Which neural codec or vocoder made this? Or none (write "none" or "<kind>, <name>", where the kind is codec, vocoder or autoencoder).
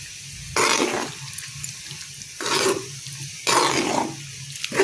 none